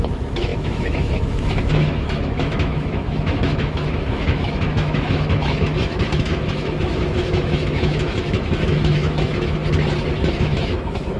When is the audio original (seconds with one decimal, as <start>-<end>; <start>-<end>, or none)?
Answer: 9.6-10.4